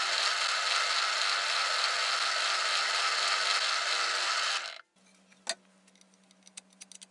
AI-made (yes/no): no